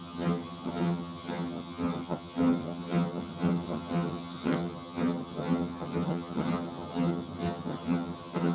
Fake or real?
fake